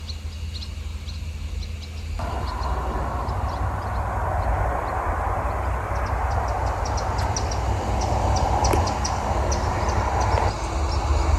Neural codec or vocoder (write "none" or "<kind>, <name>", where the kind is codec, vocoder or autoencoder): none